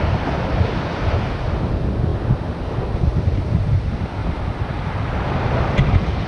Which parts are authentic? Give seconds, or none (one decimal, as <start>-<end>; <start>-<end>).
0.0-4.2; 4.9-6.3